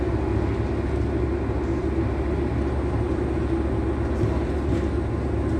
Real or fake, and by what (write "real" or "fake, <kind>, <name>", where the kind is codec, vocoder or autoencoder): real